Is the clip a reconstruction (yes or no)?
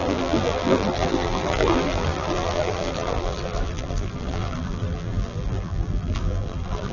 yes